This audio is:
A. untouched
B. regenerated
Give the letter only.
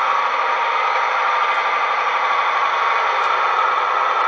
A